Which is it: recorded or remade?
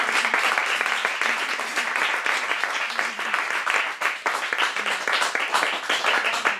recorded